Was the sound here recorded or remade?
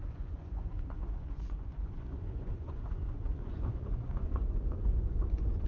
remade